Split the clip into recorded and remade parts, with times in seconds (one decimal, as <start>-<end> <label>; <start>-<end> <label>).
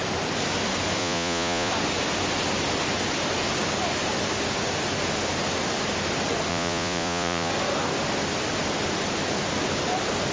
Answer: 0.0-1.0 recorded; 1.0-1.7 remade; 1.7-6.5 recorded; 6.5-7.5 remade; 7.5-10.3 recorded